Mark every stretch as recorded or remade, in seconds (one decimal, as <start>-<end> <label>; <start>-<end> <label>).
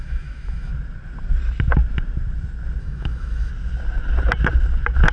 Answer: 0.0-0.7 remade; 0.7-2.8 recorded; 2.8-3.5 remade; 3.5-5.1 recorded